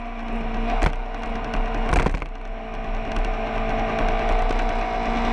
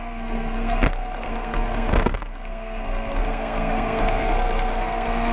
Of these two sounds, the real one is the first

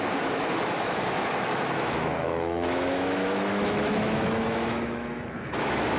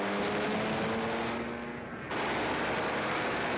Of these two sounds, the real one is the second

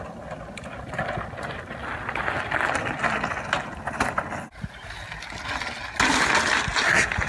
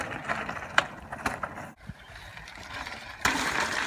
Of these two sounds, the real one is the first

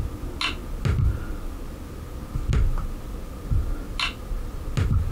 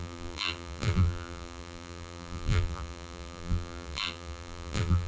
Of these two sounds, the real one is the first